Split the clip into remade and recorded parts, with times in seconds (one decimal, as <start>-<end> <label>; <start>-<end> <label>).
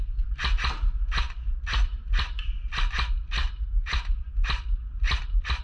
0.0-3.8 recorded; 3.8-4.3 remade; 4.3-5.6 recorded